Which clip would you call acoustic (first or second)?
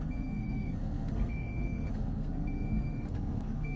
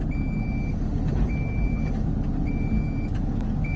second